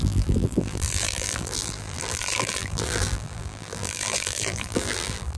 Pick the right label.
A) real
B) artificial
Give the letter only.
B